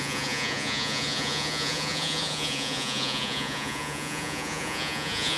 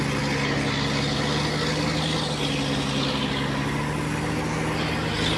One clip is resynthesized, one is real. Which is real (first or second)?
second